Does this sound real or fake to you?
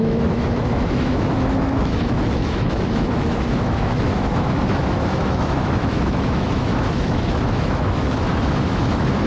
fake